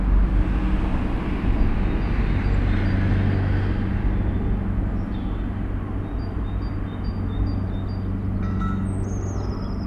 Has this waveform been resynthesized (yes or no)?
no